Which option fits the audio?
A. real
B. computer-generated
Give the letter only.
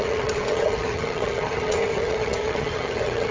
B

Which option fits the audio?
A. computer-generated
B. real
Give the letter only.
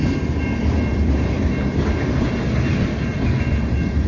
B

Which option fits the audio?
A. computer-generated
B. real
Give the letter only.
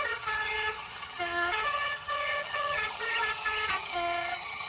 A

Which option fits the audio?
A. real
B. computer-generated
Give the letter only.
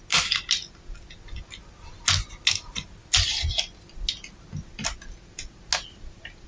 A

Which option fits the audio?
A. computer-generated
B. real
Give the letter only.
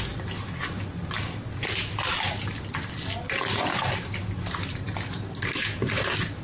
B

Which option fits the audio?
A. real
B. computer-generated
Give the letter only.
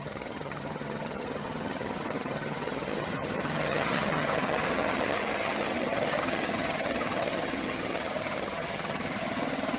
B